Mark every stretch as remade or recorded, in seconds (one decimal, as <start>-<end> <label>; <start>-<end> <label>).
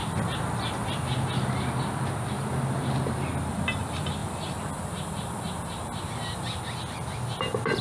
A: 0.0-7.8 recorded